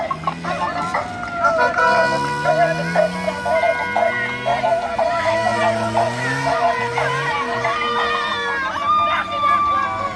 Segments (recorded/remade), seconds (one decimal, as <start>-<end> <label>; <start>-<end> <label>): 0.0-10.2 recorded